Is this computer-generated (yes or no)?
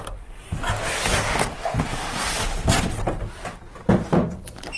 no